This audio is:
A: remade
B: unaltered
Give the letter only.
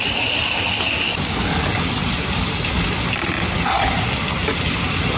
B